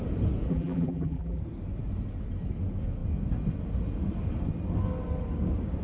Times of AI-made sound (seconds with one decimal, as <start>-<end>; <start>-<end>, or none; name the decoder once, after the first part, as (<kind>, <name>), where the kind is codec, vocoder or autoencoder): 0.5-1.4 (vocoder, BigVGAN v2)